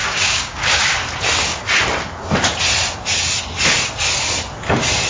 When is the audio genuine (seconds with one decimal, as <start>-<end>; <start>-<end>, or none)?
0.8-5.1